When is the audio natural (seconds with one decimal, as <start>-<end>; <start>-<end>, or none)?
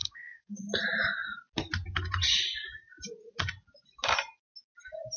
0.6-5.2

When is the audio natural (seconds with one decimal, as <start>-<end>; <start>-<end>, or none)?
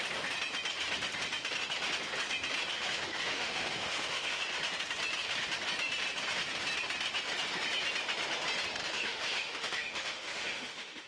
0.0-2.7; 4.4-8.8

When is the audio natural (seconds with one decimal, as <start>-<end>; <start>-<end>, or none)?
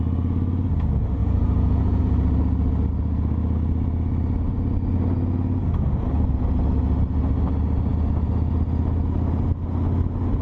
0.0-1.2; 2.0-10.4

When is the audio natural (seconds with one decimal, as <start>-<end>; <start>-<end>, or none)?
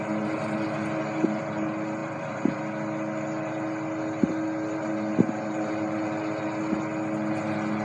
0.0-2.0; 2.6-7.8